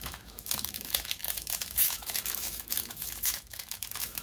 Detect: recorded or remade remade